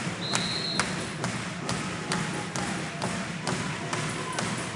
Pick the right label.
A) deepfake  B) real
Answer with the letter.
B